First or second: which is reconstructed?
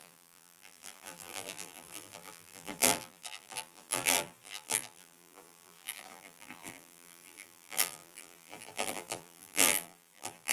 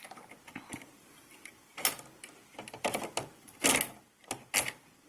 first